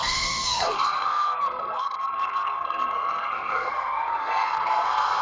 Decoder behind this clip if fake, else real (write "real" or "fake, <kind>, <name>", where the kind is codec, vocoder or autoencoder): fake, codec, SNAC